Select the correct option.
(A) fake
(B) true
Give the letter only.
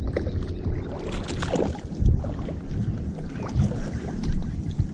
B